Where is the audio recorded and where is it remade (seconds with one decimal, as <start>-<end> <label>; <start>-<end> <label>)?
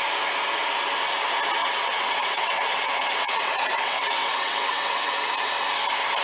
0.0-1.6 recorded; 1.6-5.3 remade; 5.3-6.2 recorded